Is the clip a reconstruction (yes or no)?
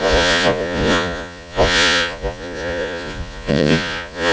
yes